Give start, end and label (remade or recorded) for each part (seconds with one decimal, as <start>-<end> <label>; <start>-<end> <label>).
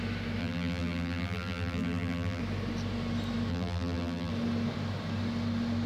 0.0-0.4 recorded; 0.4-2.4 remade; 2.4-3.5 recorded; 3.5-4.3 remade; 4.3-5.9 recorded